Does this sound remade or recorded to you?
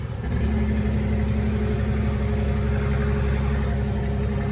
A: recorded